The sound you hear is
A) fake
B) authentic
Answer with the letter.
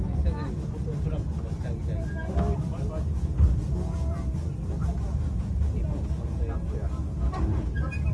B